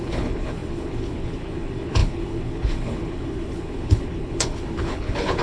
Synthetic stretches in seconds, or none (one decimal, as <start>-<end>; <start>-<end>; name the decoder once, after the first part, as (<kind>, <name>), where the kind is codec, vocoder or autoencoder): 0.0-5.4 (codec, HILCodec)